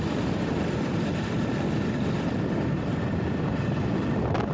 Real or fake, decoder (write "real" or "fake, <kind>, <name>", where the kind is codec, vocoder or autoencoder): real